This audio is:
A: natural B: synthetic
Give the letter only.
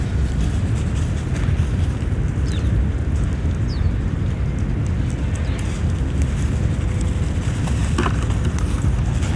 A